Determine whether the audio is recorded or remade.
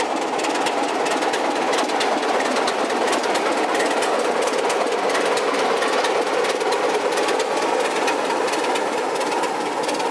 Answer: recorded